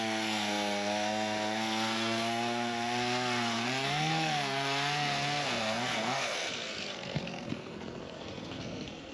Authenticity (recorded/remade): remade